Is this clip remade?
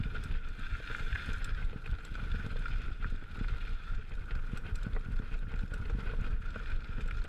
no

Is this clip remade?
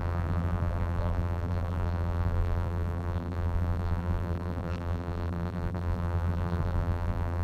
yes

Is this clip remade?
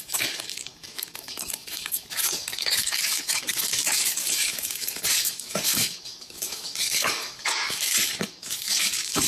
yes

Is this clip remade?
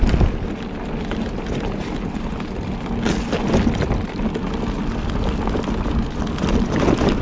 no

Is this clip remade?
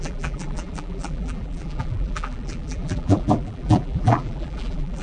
yes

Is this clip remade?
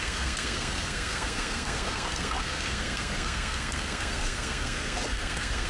yes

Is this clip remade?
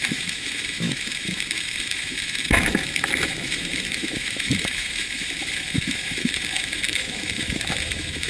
yes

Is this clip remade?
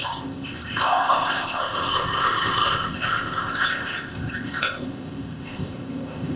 yes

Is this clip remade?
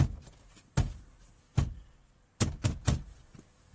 no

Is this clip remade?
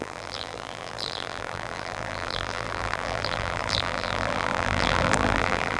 yes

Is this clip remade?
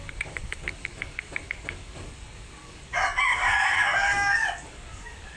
yes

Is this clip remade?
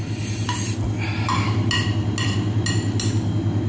no